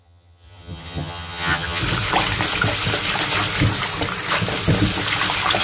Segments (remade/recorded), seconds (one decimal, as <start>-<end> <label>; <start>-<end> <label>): 0.0-1.8 remade; 1.8-5.6 recorded